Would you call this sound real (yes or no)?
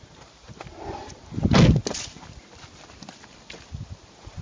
yes